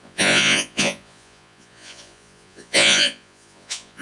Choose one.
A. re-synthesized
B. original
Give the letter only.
A